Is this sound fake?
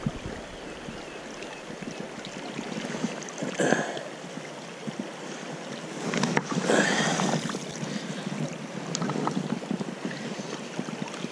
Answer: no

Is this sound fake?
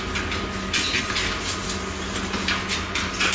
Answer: no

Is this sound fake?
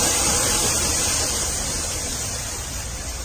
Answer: yes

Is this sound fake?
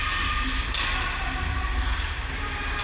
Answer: no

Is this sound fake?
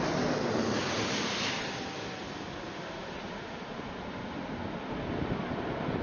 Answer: no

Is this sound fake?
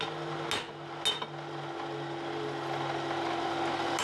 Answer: no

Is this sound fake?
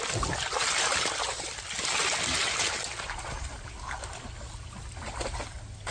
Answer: no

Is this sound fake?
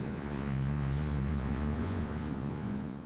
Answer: yes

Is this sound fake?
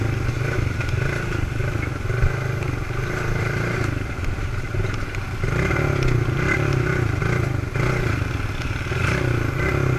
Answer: no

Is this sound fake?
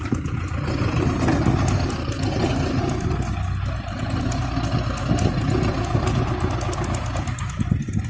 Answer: no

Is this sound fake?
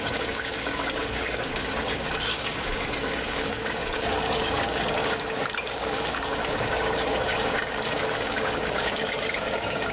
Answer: yes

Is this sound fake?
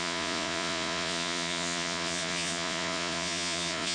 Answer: yes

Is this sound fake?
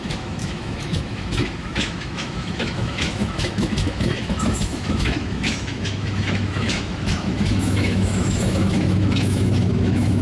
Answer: yes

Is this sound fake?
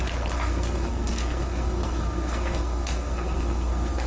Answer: yes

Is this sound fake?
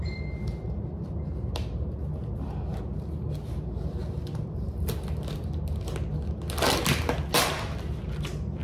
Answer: no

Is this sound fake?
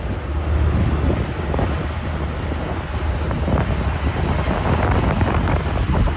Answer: no